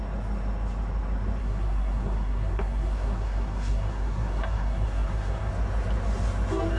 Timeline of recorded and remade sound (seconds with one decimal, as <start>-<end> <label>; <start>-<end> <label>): 0.0-1.4 recorded; 1.4-5.5 remade; 5.5-6.8 recorded